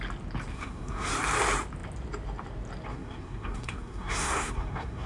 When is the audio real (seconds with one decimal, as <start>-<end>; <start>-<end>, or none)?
0.0-0.5; 1.1-2.9